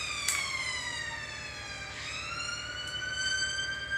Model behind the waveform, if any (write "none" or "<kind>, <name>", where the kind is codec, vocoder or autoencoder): none